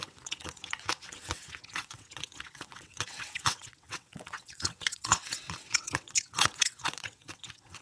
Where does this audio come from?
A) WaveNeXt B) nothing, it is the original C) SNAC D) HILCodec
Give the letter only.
A